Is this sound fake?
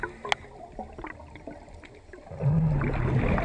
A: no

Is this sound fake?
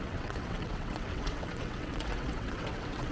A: yes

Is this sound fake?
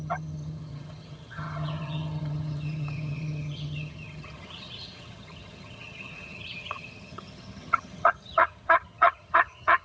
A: yes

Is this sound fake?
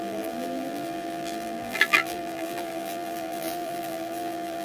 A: yes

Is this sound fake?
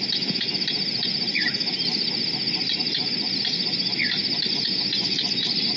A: no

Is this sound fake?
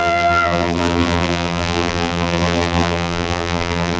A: yes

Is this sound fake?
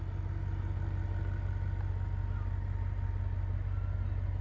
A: no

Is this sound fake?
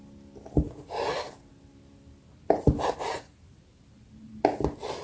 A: no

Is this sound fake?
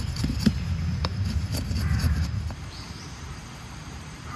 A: yes